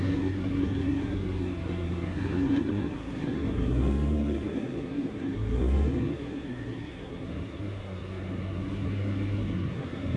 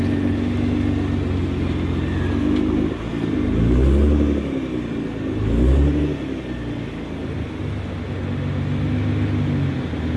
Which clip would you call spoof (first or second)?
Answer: first